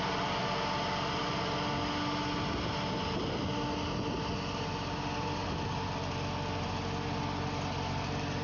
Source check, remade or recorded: recorded